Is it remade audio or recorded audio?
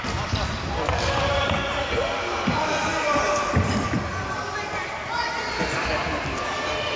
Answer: recorded